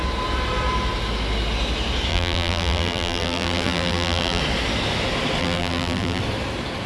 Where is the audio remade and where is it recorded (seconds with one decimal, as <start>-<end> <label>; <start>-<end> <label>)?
0.0-2.1 recorded; 2.1-4.4 remade; 4.4-5.4 recorded; 5.4-6.2 remade; 6.2-6.9 recorded

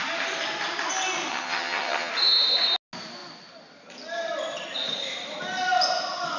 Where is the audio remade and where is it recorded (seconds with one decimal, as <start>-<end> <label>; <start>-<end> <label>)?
0.0-1.3 recorded; 1.3-2.1 remade; 2.1-6.4 recorded